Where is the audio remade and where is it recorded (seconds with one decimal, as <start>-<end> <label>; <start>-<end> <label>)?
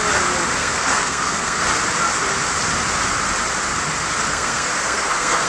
0.0-0.6 recorded; 0.6-1.6 remade; 1.6-4.3 recorded; 4.3-5.5 remade